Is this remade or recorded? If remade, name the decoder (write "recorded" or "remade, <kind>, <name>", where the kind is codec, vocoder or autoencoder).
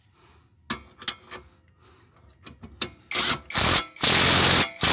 recorded